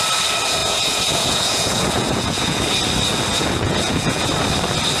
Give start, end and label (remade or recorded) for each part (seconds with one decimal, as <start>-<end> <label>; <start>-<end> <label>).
0.0-0.6 recorded; 0.6-2.6 remade; 2.6-3.3 recorded; 3.3-4.3 remade; 4.3-5.0 recorded